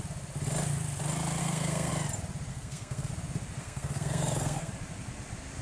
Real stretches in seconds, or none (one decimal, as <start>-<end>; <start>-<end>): 0.0-1.4; 1.9-2.5; 3.1-3.6; 4.7-5.6